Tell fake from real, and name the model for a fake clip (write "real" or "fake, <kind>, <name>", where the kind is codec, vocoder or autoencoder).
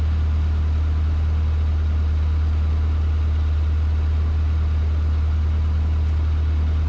real